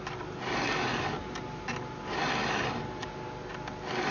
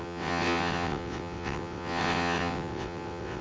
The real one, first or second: first